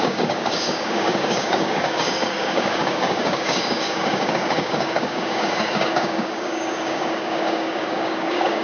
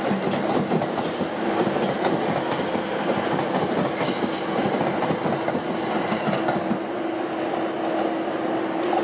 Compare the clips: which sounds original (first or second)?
second